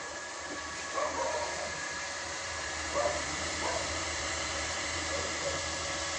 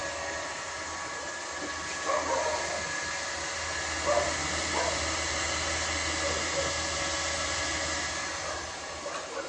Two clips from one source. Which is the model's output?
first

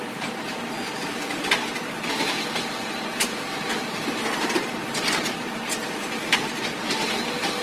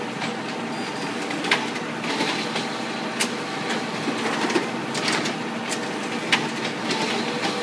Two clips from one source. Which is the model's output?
first